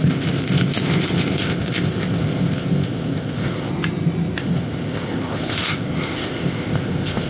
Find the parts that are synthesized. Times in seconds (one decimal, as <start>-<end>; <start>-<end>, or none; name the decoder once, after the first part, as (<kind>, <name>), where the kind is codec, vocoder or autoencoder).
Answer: 0.0-3.7 (codec, ZipCodec); 4.4-7.3